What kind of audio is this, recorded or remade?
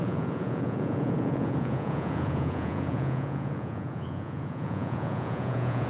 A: remade